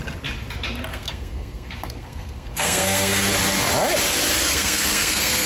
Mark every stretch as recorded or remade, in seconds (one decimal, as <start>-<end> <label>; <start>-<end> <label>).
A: 0.0-0.9 recorded; 0.9-3.1 remade; 3.1-4.4 recorded; 4.4-5.5 remade